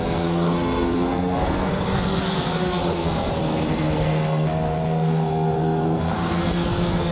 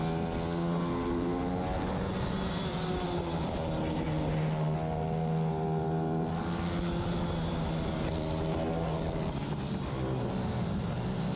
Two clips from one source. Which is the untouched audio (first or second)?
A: second